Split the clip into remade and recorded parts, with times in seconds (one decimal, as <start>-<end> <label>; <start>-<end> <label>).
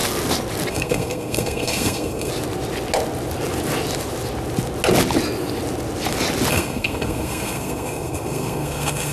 0.0-0.7 recorded; 0.7-2.3 remade; 2.3-6.5 recorded; 6.5-9.1 remade